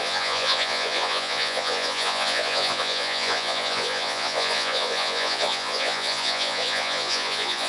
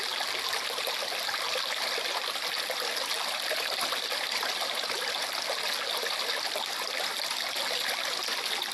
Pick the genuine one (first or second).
second